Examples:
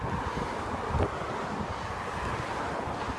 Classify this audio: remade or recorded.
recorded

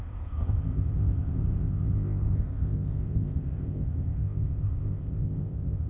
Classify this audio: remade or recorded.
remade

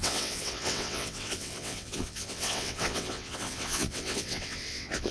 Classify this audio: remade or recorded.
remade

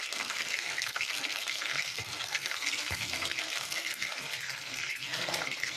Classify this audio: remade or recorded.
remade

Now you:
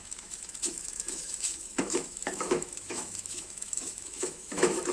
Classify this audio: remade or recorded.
remade